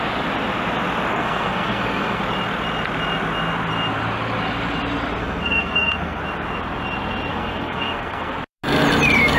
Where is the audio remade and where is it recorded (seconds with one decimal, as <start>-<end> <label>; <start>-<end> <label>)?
0.0-1.1 recorded; 1.1-2.2 remade; 2.2-5.2 recorded; 5.2-6.2 remade; 6.2-7.3 recorded; 7.3-8.3 remade; 8.3-9.4 recorded